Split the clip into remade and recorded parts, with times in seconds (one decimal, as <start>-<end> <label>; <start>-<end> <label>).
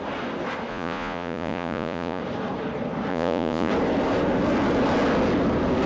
0.0-0.7 recorded; 0.7-2.2 remade; 2.2-3.1 recorded; 3.1-3.7 remade; 3.7-5.9 recorded